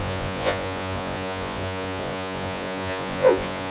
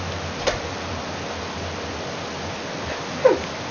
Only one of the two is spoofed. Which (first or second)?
first